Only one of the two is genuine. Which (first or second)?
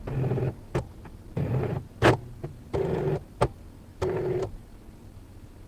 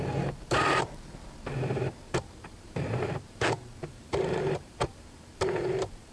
first